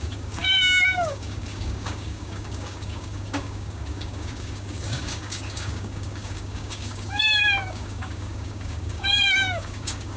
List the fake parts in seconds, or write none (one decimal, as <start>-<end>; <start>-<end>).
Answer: 0.0-10.2